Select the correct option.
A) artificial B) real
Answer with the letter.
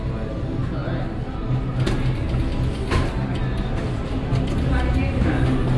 B